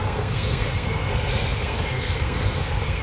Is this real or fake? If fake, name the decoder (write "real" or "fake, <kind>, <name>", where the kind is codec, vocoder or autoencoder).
fake, codec, SNAC